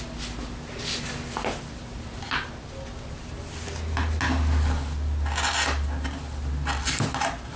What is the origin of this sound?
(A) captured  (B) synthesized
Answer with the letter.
A